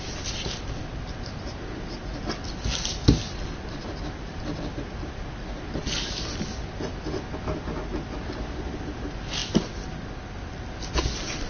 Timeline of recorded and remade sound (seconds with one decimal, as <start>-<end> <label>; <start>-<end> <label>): 0.0-11.5 recorded